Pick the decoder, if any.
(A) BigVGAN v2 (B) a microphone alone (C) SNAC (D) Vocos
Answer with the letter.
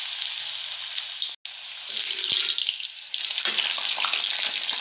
B